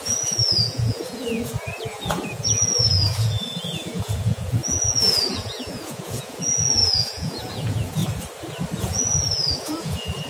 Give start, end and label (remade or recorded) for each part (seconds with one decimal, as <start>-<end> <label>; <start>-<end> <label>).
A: 0.0-8.0 remade; 8.0-8.8 recorded; 8.8-10.3 remade